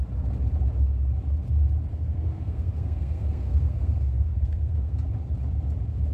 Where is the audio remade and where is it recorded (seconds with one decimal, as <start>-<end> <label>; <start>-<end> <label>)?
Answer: 0.0-1.9 recorded; 1.9-5.1 remade; 5.1-6.1 recorded